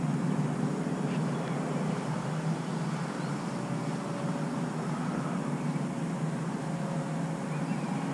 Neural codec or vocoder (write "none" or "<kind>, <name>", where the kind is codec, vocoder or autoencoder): none